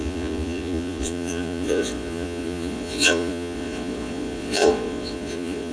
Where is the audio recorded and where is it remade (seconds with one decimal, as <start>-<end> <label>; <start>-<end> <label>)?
0.0-5.7 remade